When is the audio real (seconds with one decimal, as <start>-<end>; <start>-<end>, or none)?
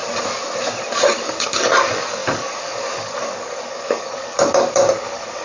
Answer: 0.0-1.0